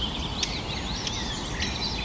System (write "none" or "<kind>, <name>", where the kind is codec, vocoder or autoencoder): none